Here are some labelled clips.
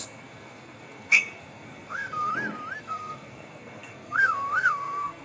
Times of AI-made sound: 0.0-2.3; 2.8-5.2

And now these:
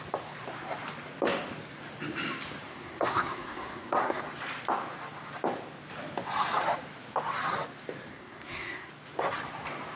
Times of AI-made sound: 2.7-4.2; 8.1-8.9

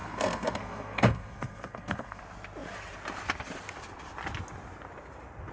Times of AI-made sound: 0.0-2.2

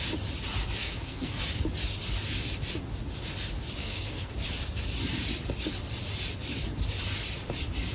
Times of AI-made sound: 0.8-1.4; 3.8-4.3

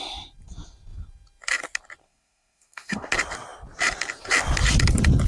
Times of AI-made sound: 2.0-3.1

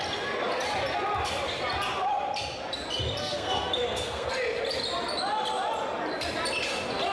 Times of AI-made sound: 3.2-4.3

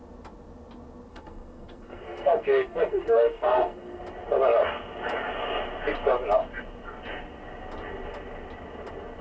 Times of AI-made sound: 1.1-4.0

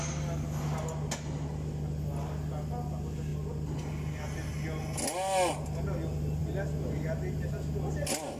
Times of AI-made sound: none